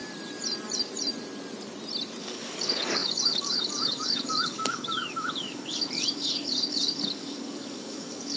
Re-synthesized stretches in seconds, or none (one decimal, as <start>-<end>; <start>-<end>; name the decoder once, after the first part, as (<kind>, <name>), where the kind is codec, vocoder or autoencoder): 2.2-8.4 (codec, DAC)

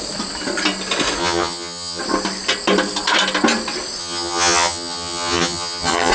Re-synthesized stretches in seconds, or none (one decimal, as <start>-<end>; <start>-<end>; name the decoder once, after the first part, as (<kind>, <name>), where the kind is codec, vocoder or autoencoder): 1.2-2.0 (vocoder, HiFi-GAN); 4.0-6.1